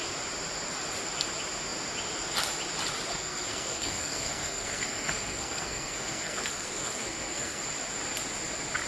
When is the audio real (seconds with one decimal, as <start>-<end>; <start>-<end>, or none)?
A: 0.0-3.1; 7.7-8.9